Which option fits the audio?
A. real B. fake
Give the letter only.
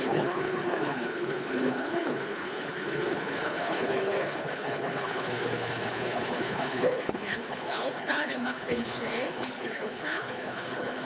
B